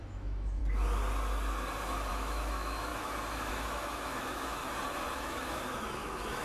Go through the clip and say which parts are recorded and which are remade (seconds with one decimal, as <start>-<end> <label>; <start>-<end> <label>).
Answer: 0.0-0.6 remade; 0.6-2.1 recorded; 2.1-4.6 remade; 4.6-5.1 recorded; 5.1-6.4 remade